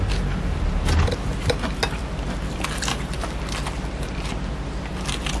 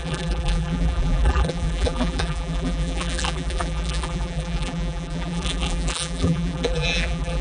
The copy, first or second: second